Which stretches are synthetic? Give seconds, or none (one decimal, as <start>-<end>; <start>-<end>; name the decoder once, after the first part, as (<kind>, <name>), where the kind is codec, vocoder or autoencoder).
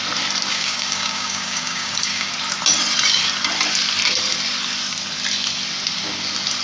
0.5-2.3 (codec, DAC)